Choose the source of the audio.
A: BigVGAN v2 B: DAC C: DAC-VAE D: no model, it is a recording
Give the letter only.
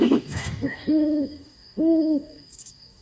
B